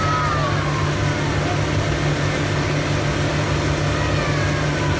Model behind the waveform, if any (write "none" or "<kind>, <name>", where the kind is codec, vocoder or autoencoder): none